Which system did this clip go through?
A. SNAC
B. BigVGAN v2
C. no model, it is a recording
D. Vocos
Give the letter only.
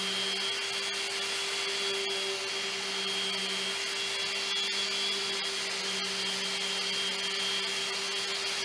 C